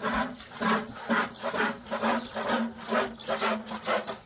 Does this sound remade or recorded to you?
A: recorded